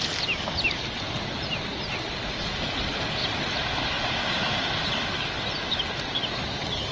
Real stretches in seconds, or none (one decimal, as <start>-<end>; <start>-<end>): 0.0-6.9